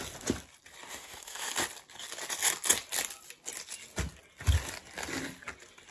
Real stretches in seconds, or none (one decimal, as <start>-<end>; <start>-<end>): 0.0-0.9; 1.5-5.9